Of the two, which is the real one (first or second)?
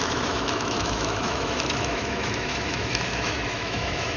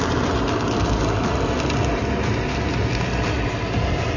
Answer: second